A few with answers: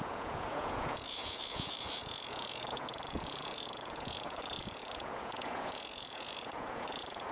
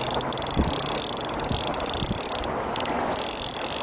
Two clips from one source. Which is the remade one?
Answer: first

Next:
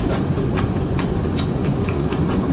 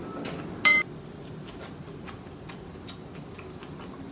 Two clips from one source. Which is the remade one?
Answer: first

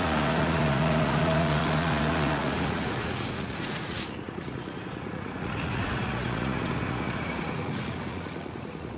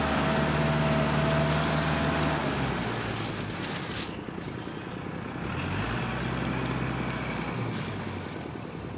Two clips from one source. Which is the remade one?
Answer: first